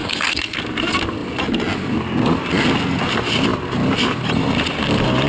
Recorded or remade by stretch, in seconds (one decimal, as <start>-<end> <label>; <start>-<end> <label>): 0.0-0.6 remade; 0.6-5.3 recorded